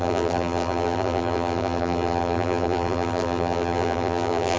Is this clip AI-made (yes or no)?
yes